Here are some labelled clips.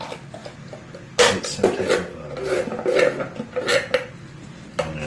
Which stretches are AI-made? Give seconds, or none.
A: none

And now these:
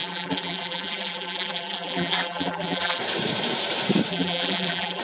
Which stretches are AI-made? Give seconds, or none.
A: 0.0-3.0 (vocoder, BigVGAN v2); 4.1-5.0

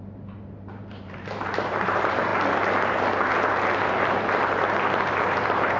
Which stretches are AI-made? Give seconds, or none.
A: 0.0-2.3 (vocoder, BigVGAN v2); 5.2-5.8